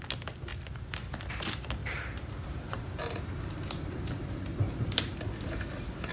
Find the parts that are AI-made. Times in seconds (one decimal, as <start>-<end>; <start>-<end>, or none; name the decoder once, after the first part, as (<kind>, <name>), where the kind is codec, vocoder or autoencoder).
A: 0.5-1.3 (vocoder, BigVGAN v2); 1.8-3.5; 4.5-5.2